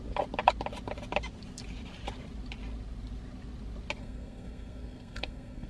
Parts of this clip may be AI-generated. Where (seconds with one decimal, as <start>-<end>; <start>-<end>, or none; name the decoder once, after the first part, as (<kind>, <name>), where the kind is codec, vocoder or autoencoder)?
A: 4.0-5.7 (codec, SNAC)